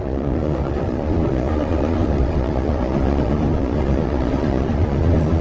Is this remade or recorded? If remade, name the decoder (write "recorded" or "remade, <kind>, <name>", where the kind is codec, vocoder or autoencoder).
remade, vocoder, Vocos